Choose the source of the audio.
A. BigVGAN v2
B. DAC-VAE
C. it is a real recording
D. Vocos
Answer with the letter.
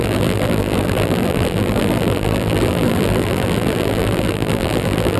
A